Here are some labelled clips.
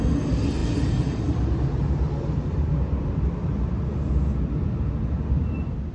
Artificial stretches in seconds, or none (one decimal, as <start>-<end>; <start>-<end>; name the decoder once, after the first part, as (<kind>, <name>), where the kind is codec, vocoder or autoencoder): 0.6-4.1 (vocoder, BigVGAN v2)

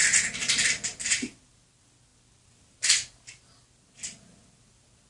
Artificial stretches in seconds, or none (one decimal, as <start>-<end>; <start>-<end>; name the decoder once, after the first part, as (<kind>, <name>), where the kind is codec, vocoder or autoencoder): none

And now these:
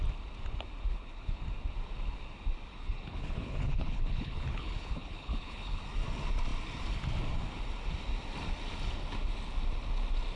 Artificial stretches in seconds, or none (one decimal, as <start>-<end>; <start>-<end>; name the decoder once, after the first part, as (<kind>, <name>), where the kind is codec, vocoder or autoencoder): 0.9-1.4 (codec, HILCodec); 2.7-5.8

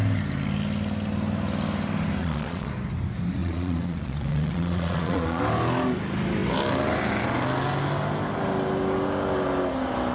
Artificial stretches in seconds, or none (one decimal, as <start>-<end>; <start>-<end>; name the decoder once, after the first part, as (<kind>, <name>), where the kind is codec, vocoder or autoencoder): 2.2-2.7 (vocoder, Vocos); 3.4-5.4

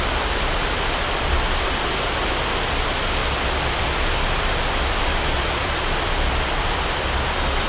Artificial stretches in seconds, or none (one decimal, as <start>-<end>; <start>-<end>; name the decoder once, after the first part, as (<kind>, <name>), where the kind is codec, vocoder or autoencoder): none